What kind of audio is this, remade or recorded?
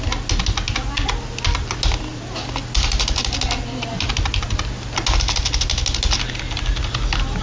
recorded